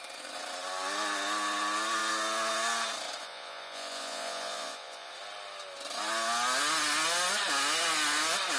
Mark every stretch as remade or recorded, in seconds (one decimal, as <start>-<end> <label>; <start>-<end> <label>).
0.0-3.2 recorded; 3.2-5.1 remade; 5.1-8.6 recorded